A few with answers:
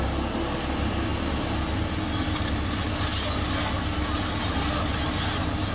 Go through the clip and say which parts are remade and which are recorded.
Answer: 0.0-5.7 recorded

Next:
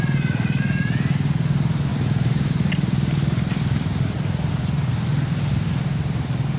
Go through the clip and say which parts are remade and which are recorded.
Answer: 0.0-6.6 recorded

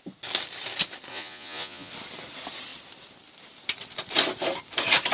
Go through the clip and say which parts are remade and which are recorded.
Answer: 0.0-1.1 recorded; 1.1-1.9 remade; 1.9-5.1 recorded

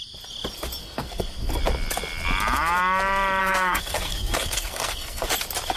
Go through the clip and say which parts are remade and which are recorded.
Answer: 0.0-0.8 recorded; 0.8-1.6 remade; 1.6-3.4 recorded; 3.4-5.3 remade; 5.3-5.8 recorded